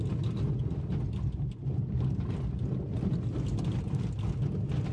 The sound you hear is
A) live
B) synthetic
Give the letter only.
A